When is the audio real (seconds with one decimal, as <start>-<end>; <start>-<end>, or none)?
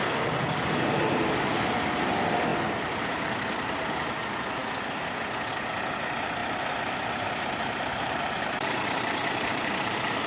0.0-6.4